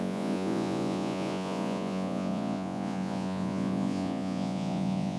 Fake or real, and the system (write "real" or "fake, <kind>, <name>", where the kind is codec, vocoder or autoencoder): fake, vocoder, Vocos